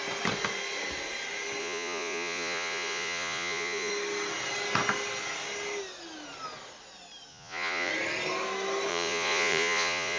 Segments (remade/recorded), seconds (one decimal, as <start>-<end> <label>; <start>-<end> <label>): 0.0-1.6 recorded; 1.6-3.9 remade; 3.9-7.3 recorded; 7.3-7.9 remade; 7.9-8.9 recorded; 8.9-10.2 remade